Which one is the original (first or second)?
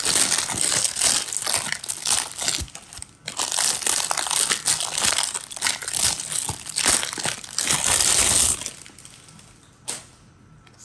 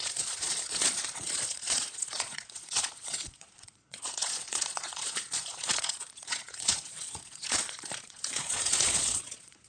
first